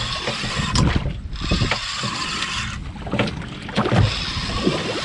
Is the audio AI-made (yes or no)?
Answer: no